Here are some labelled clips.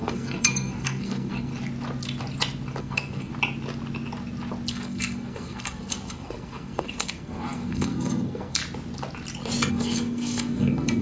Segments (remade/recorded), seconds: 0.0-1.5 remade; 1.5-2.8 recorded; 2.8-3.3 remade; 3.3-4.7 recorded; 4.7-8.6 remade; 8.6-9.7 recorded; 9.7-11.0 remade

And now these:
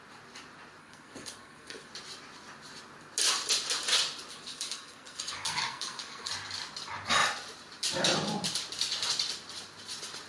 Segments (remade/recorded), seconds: 0.0-0.8 recorded; 0.8-1.9 remade; 1.9-4.3 recorded; 4.3-6.3 remade; 6.3-10.3 recorded

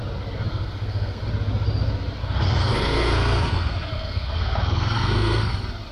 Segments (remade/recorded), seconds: 0.0-0.5 recorded; 0.5-1.3 remade; 1.3-2.2 recorded; 2.2-5.5 remade; 5.5-5.9 recorded

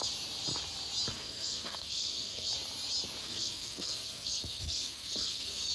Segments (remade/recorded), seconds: 0.0-1.1 recorded; 1.1-2.5 remade; 2.5-3.2 recorded; 3.2-5.7 remade

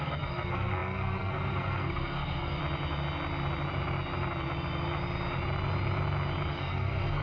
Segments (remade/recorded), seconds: 0.0-2.6 remade; 2.6-6.5 recorded; 6.5-7.2 remade

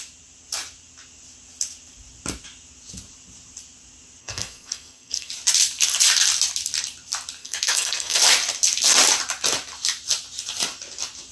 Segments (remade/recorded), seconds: 0.0-4.2 recorded; 4.2-5.3 remade; 5.3-7.4 recorded; 7.4-8.2 remade; 8.2-11.3 recorded

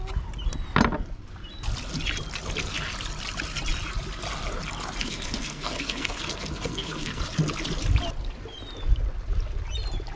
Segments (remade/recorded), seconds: 0.0-5.0 recorded; 5.0-7.2 remade; 7.2-10.2 recorded